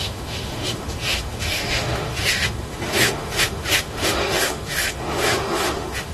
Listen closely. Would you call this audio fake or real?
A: fake